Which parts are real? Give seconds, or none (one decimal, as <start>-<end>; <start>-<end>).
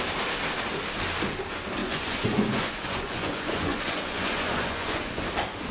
0.0-1.8; 5.2-5.7